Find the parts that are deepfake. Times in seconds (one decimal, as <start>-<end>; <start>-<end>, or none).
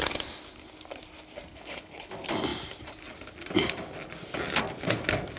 1.5-2.1